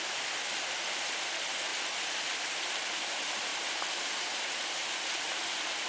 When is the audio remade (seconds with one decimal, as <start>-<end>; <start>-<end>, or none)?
0.0-1.7; 3.1-5.9